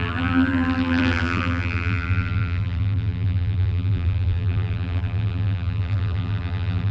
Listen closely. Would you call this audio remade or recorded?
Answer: remade